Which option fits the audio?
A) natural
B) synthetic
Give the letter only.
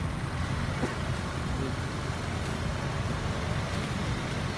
A